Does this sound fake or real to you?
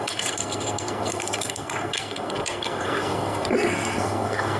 fake